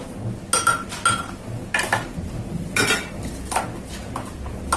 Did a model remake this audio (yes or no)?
no